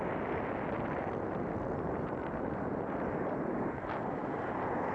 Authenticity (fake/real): real